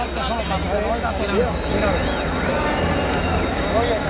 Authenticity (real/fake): real